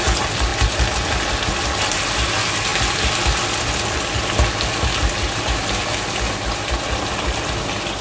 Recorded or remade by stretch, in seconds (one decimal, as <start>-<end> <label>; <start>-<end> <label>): 0.0-8.0 recorded